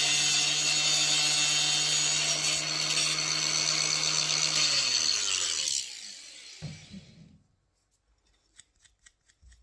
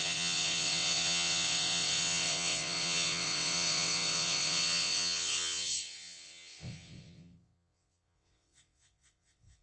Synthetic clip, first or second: second